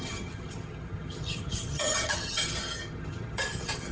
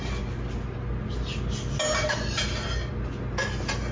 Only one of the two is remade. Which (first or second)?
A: first